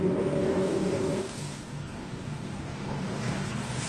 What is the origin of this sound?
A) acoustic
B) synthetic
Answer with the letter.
B